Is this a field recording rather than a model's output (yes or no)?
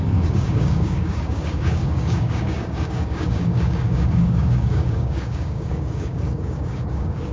no